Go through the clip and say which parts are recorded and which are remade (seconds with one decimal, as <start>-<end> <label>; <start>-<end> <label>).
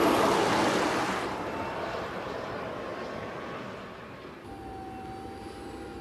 0.0-6.0 recorded